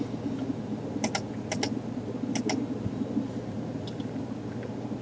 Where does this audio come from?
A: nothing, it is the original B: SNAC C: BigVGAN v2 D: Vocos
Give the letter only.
A